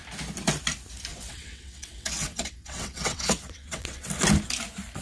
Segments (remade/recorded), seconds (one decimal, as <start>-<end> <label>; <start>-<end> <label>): 0.0-1.1 recorded; 1.1-4.1 remade; 4.1-5.0 recorded